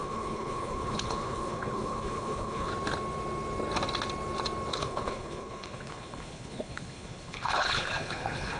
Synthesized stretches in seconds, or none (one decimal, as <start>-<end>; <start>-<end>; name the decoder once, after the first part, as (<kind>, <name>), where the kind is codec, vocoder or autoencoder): 0.0-2.7 (codec, HILCodec); 4.7-8.6